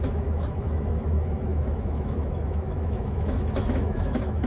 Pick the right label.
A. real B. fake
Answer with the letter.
B